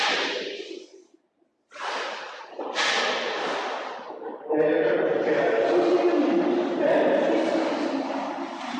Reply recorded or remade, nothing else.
recorded